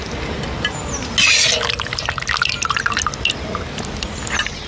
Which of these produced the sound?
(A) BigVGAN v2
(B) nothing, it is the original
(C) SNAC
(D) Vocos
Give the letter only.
B